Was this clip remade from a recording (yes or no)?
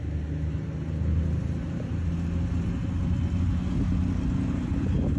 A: no